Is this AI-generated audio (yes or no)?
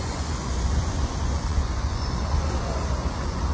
yes